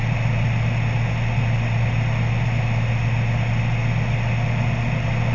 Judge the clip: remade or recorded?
recorded